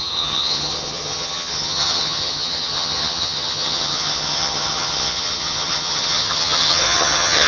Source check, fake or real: fake